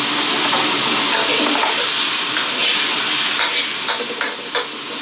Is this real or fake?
real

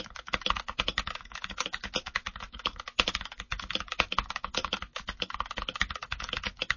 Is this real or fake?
fake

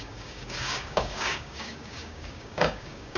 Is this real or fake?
fake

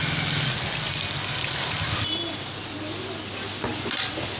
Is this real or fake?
real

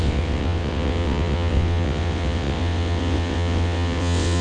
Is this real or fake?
fake